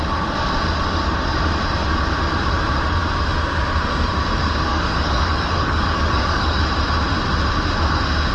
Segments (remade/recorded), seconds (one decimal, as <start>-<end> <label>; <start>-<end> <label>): 0.0-4.7 recorded; 4.7-6.6 remade; 6.6-8.3 recorded